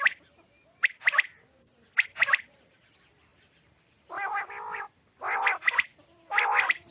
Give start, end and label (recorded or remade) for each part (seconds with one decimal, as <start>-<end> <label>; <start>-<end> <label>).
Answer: 0.0-3.3 recorded; 3.3-6.9 remade